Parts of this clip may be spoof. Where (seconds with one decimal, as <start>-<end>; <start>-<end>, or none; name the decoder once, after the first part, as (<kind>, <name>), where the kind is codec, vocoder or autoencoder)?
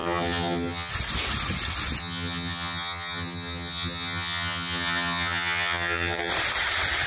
0.0-0.9 (vocoder, HiFi-GAN); 2.0-6.3